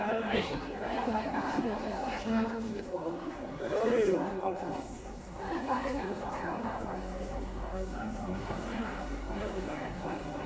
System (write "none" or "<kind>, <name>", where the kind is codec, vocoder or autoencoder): codec, SNAC